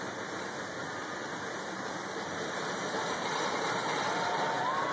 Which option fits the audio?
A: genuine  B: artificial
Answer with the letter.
A